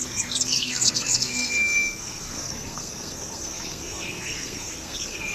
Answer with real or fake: fake